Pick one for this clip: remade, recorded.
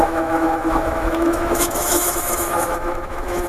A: remade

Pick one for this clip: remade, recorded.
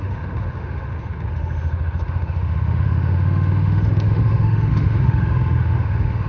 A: remade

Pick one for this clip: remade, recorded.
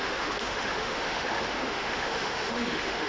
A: remade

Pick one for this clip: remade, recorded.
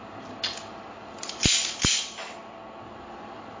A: recorded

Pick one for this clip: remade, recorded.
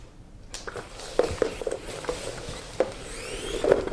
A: recorded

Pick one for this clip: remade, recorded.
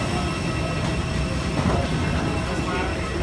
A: recorded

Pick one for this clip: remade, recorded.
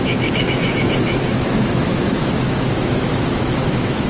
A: remade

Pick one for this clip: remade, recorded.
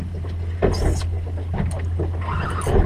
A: recorded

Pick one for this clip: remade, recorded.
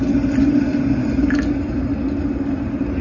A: recorded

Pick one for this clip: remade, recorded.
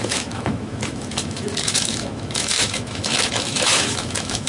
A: remade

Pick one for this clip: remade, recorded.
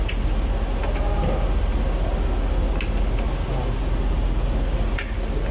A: recorded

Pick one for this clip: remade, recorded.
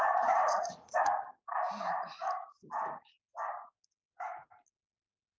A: recorded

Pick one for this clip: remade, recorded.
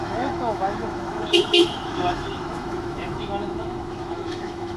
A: remade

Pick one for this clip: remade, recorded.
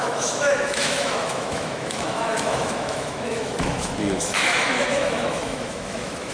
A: remade